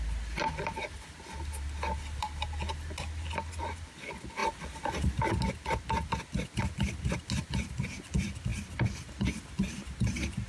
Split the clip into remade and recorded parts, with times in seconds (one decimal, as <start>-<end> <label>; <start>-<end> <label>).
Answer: 0.0-10.5 recorded

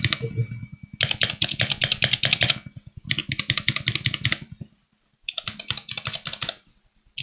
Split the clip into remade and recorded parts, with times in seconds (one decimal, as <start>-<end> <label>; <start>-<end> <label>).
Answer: 0.0-3.2 recorded; 3.2-6.8 remade; 6.8-7.2 recorded

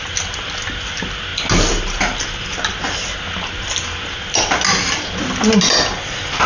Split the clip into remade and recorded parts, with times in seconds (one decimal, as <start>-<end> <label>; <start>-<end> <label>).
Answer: 0.0-6.5 recorded

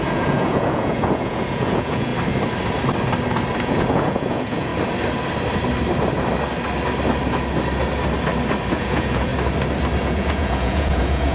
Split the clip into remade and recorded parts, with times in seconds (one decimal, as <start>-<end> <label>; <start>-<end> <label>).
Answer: 0.0-2.1 remade; 2.1-3.6 recorded; 3.6-4.7 remade; 4.7-8.7 recorded; 8.7-9.3 remade; 9.3-10.0 recorded; 10.0-11.3 remade